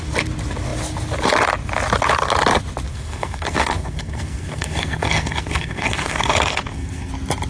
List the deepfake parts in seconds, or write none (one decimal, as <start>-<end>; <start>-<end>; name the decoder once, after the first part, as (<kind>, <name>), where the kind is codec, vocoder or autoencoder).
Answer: 2.9-7.1 (codec, SNAC)